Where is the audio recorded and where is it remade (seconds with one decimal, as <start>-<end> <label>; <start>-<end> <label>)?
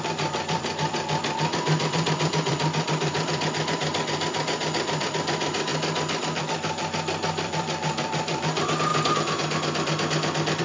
0.0-5.7 remade; 5.7-6.4 recorded; 6.4-8.9 remade; 8.9-10.6 recorded